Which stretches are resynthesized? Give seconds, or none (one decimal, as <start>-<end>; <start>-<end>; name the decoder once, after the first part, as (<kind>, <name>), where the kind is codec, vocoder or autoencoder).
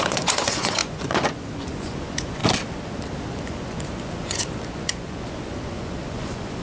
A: 0.0-2.4 (vocoder, Vocos); 3.3-6.6